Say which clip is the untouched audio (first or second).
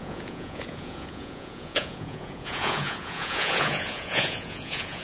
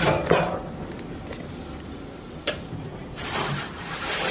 second